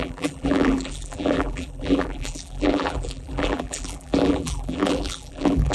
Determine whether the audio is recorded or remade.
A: remade